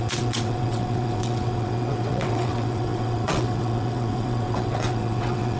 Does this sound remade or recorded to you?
remade